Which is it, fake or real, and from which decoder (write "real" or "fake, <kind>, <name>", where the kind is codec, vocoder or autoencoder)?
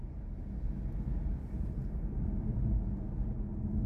real